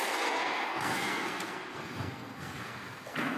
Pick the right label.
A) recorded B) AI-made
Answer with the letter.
B